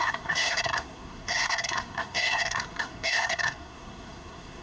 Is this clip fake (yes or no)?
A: yes